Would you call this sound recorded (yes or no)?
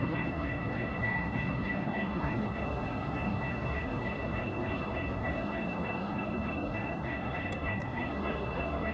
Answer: no